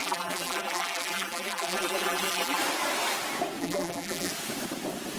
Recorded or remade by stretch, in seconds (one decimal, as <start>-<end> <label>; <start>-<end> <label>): 0.0-2.6 remade; 2.6-3.6 recorded; 3.6-4.3 remade; 4.3-5.2 recorded